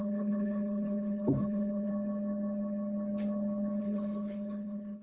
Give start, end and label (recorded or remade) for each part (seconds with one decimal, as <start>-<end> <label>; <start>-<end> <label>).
0.0-1.9 remade; 1.9-3.8 recorded; 3.8-5.0 remade